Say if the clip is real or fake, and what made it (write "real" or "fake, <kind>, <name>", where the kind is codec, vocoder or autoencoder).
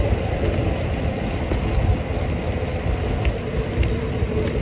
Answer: real